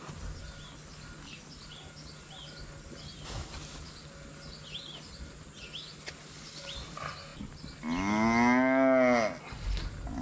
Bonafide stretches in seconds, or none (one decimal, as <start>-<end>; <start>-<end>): 0.0-10.2